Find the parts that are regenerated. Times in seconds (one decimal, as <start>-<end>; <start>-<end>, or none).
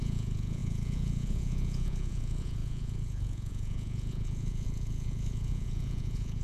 0.0-6.4